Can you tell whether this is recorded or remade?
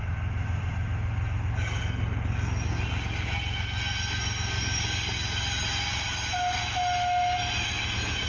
recorded